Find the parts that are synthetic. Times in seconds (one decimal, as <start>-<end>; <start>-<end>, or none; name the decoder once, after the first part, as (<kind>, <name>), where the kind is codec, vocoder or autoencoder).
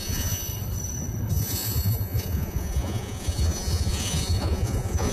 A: 0.0-0.5 (vocoder, Vocos); 1.3-5.1